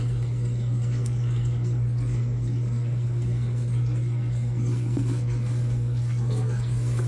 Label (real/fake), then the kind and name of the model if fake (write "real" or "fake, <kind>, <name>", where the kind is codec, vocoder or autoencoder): fake, codec, SNAC